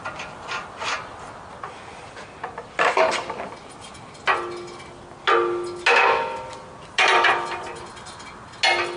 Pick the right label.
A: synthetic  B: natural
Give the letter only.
B